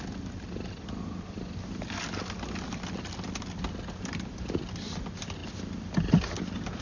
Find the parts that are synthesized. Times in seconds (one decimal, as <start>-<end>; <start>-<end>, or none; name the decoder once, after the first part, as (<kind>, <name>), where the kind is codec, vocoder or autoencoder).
none